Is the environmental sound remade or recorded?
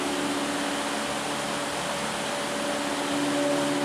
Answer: recorded